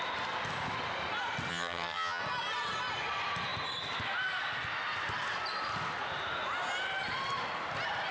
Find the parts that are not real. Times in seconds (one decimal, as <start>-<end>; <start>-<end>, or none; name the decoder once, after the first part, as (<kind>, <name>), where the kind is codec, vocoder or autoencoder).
1.5-2.2 (vocoder, HiFi-GAN)